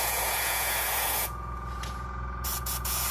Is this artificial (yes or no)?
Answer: yes